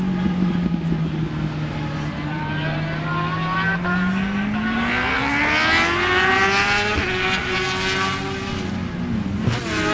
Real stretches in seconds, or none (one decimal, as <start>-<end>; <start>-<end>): 0.0-9.9